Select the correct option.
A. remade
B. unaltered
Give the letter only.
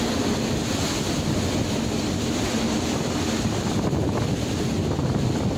B